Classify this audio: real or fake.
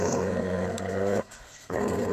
fake